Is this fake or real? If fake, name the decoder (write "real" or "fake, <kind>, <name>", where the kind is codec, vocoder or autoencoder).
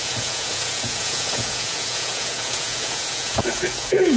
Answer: fake, vocoder, Vocos